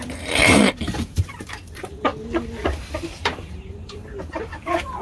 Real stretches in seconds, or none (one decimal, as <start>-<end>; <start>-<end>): 2.1-3.1